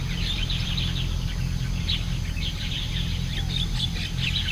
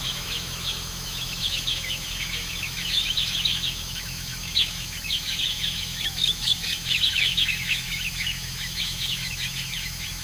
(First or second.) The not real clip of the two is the second